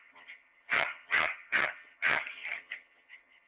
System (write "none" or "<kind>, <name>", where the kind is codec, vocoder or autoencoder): vocoder, HiFi-GAN